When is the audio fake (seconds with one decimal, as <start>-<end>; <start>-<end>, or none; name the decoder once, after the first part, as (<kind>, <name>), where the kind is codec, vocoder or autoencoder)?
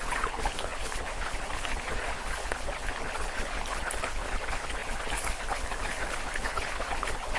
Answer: 0.0-7.4 (codec, HILCodec)